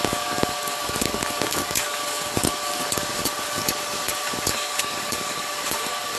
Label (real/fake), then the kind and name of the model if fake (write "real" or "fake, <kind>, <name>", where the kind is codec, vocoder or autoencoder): fake, codec, DAC